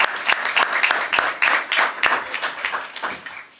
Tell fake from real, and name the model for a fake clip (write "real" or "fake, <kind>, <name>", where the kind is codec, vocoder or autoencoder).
real